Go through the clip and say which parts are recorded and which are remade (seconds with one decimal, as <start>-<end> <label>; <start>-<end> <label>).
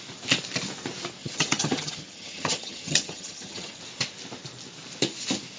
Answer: 0.0-1.2 recorded; 1.2-3.8 remade; 3.8-5.6 recorded